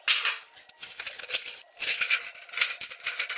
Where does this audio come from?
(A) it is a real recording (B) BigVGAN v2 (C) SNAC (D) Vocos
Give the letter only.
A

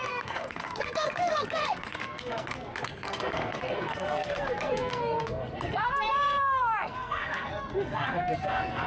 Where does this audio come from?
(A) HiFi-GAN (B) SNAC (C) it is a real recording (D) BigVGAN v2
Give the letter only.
B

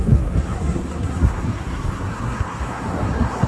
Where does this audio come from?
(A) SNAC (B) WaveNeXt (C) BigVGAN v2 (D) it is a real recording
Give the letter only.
A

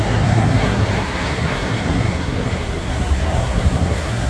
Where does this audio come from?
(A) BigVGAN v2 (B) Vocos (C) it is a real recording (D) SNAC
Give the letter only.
D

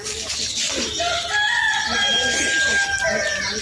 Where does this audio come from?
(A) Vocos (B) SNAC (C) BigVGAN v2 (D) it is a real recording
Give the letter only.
D